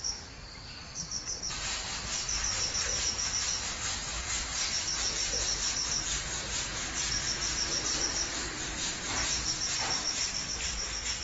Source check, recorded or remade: remade